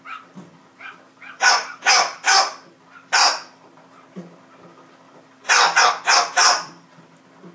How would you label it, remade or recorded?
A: remade